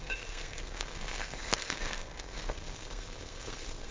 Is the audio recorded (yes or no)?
no